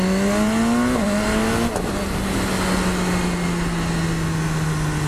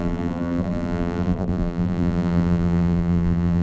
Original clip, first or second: first